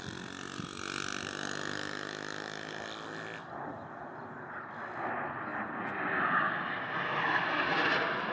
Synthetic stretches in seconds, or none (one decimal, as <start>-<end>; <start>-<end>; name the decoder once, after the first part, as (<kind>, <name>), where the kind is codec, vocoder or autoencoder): none